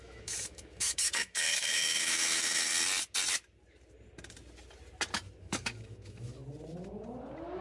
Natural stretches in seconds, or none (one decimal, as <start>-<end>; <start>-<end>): 2.7-5.4; 6.4-7.6